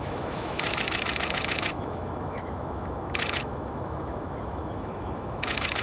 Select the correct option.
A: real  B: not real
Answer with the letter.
B